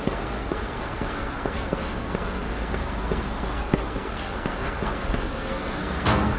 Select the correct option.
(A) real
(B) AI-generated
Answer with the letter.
B